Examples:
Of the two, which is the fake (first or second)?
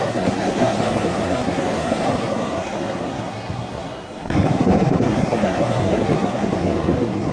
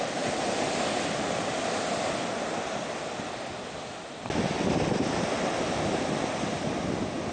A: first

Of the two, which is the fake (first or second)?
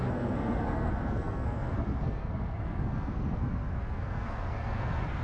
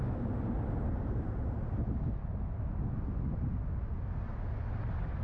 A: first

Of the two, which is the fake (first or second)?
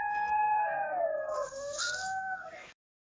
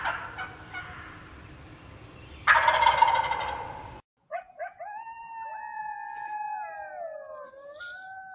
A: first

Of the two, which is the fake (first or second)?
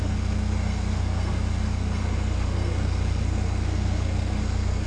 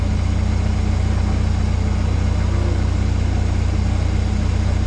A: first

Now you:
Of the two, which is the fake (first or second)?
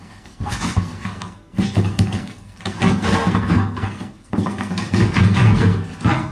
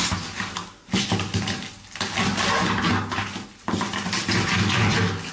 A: first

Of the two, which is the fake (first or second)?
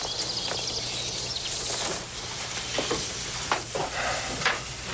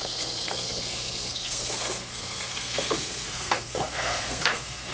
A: second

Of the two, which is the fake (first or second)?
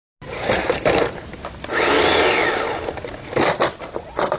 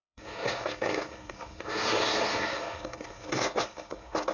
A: second